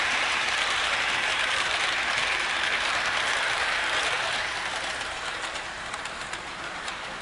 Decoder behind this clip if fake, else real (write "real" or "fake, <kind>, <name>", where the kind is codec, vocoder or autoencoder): fake, vocoder, BigVGAN v2